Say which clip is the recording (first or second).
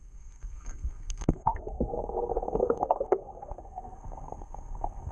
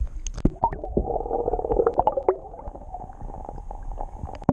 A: second